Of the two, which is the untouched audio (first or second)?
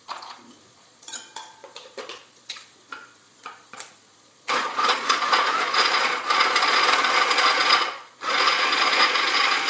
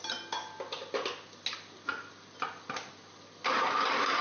second